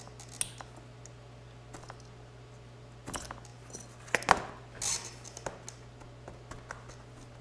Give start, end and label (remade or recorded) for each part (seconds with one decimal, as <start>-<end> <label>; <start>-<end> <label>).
0.0-7.4 recorded